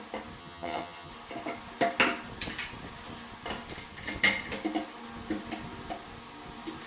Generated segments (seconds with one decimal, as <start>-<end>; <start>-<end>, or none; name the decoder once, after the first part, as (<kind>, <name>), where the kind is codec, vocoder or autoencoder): 0.4-1.1 (vocoder, HiFi-GAN)